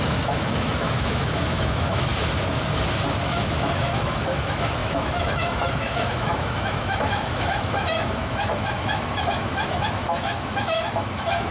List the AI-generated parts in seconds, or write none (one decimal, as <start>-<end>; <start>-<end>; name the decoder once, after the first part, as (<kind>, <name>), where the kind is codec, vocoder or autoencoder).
0.0-2.1 (autoencoder, DAC-VAE); 3.2-11.5